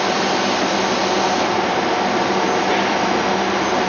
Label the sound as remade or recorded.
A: recorded